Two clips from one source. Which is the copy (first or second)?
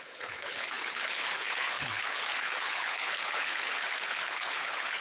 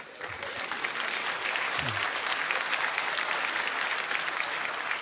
first